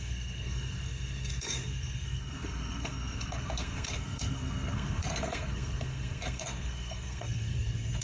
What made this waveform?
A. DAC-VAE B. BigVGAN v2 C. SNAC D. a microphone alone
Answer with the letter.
C